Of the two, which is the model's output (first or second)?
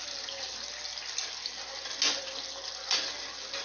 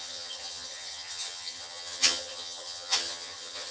second